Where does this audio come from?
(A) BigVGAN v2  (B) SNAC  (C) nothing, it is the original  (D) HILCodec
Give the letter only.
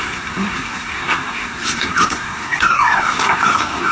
B